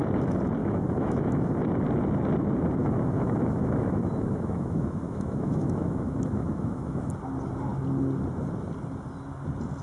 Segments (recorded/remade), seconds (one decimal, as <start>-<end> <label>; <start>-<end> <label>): 0.0-0.6 recorded; 0.6-1.5 remade; 1.5-2.8 recorded; 2.8-7.1 remade; 7.1-9.8 recorded

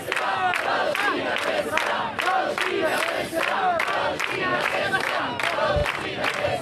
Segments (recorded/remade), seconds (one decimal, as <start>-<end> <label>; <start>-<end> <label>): 0.0-4.5 recorded; 4.5-5.2 remade; 5.2-6.6 recorded

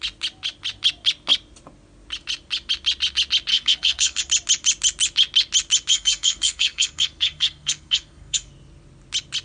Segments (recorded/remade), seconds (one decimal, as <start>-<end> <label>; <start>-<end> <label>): 0.0-3.5 recorded; 3.5-4.2 remade; 4.2-5.9 recorded; 5.9-8.5 remade; 8.5-9.4 recorded

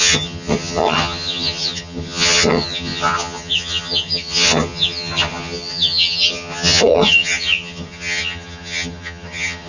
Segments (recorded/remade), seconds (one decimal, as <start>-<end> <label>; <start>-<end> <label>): 0.0-9.7 remade

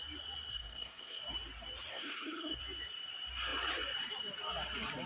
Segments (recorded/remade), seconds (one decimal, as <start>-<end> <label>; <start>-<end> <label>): 0.0-0.5 recorded; 0.5-1.2 remade; 1.2-1.9 recorded; 1.9-2.6 remade; 2.6-5.1 recorded

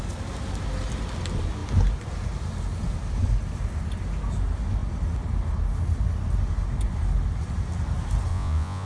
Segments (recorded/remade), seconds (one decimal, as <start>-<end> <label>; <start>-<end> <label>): 0.0-8.3 recorded; 8.3-8.9 remade

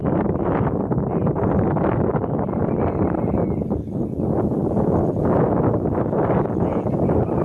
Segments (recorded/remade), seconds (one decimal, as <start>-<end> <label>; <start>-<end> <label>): 0.0-7.4 recorded